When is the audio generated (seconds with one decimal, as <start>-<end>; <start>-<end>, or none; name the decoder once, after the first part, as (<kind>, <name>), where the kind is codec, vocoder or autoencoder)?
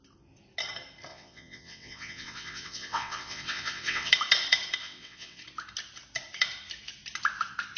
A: 1.1-4.1 (vocoder, WaveNeXt); 4.8-5.4